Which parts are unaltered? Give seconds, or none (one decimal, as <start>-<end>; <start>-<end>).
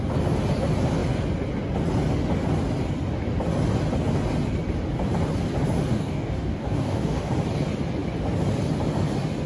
0.0-5.9; 7.3-9.5